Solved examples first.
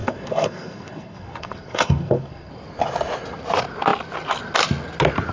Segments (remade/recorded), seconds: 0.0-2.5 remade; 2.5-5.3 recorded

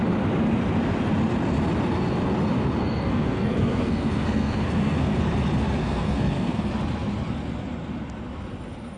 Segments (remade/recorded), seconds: 0.0-2.8 recorded; 2.8-5.2 remade; 5.2-5.8 recorded; 5.8-6.7 remade; 6.7-9.0 recorded

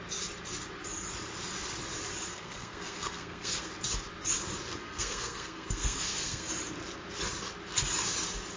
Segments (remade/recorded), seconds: 0.0-2.3 recorded; 2.3-3.7 remade; 3.7-4.8 recorded; 4.8-6.5 remade; 6.5-8.6 recorded

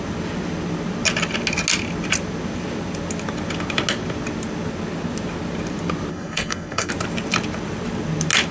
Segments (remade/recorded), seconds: 0.0-6.1 recorded; 6.1-6.9 remade; 6.9-8.5 recorded

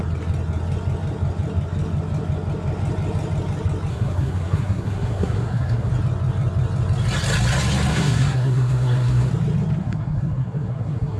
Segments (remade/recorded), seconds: 0.0-3.9 recorded; 3.9-5.9 remade; 5.9-7.9 recorded; 7.9-9.3 remade; 9.3-9.8 recorded; 9.8-11.2 remade

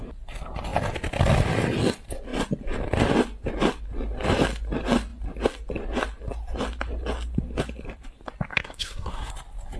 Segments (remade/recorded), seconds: 0.0-8.5 recorded; 8.5-9.3 remade; 9.3-9.8 recorded